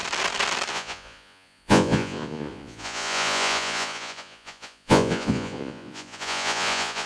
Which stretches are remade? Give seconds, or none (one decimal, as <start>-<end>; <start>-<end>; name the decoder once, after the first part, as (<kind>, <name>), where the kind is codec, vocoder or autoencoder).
0.7-7.1 (vocoder, Vocos)